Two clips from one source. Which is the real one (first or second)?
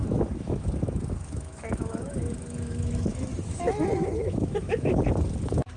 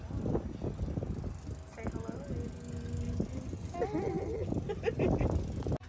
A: second